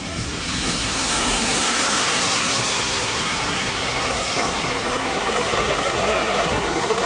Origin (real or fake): fake